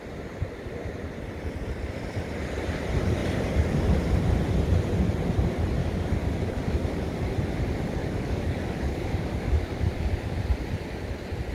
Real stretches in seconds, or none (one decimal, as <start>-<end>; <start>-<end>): 0.0-5.8; 7.2-8.0; 10.4-11.5